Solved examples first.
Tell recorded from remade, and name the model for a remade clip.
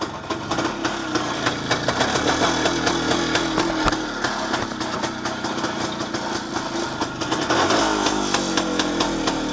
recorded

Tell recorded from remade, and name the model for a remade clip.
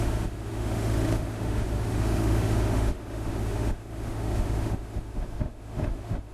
remade, autoencoder, DAC-VAE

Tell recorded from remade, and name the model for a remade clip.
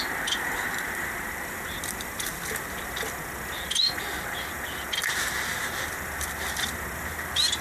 recorded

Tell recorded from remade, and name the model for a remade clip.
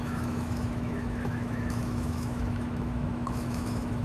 remade, autoencoder, DAC-VAE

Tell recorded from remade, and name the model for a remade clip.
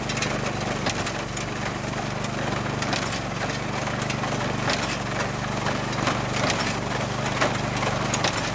recorded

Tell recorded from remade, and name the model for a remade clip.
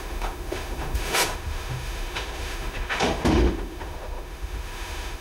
remade, autoencoder, DAC-VAE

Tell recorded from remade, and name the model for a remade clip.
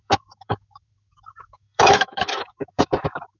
remade, autoencoder, DAC-VAE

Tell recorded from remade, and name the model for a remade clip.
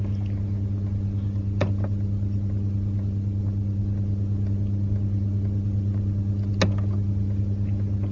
recorded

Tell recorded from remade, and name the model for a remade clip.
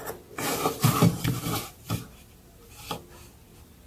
recorded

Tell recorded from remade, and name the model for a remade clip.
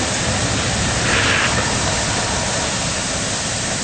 recorded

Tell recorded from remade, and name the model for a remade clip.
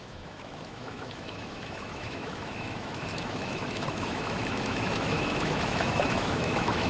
remade, autoencoder, DAC-VAE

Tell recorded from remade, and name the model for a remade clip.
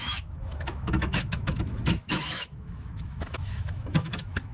remade, autoencoder, DAC-VAE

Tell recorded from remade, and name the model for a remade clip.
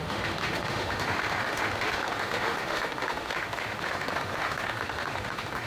remade, autoencoder, DAC-VAE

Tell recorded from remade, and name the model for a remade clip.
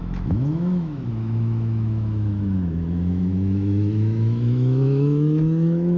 remade, autoencoder, DAC-VAE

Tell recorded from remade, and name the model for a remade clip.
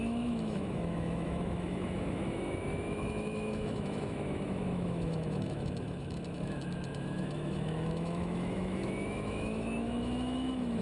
remade, autoencoder, DAC-VAE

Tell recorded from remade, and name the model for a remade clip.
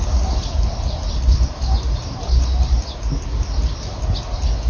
recorded